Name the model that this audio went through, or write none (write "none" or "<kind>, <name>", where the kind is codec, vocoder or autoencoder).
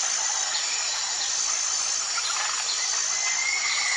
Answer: none